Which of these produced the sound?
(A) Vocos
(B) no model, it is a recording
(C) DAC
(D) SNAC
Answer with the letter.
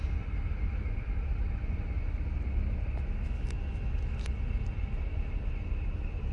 B